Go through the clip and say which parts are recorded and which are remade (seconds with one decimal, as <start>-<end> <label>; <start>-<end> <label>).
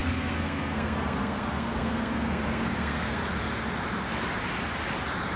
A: 0.0-3.2 remade; 3.2-5.4 recorded